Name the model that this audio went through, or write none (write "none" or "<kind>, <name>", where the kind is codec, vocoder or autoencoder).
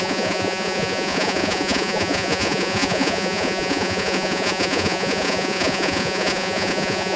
vocoder, Vocos